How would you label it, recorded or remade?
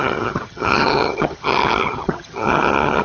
remade